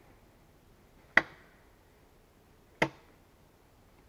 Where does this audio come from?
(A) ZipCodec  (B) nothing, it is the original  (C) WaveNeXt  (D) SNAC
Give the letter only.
B